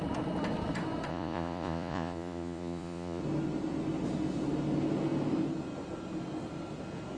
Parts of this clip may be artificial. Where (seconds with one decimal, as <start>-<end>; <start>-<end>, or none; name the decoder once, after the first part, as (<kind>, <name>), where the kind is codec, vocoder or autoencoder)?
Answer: 1.1-3.2 (vocoder, Vocos)